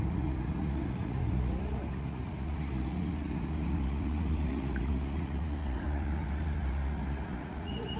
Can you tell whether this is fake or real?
fake